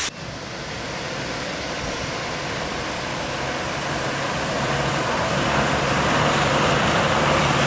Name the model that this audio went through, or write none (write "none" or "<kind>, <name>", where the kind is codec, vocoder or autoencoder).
vocoder, BigVGAN v2